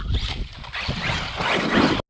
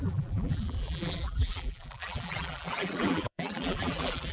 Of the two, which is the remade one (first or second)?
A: second